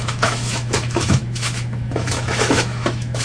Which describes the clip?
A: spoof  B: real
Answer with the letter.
A